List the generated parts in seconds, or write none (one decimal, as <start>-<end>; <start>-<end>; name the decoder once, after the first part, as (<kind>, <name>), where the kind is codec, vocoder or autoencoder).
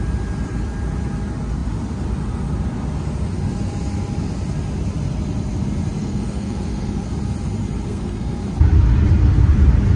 6.0-7.1 (codec, SNAC); 7.9-8.4